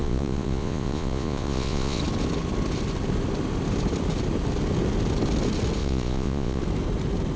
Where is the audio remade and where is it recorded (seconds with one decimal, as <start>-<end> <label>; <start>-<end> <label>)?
0.0-2.0 remade; 2.0-5.8 recorded; 5.8-6.6 remade; 6.6-7.4 recorded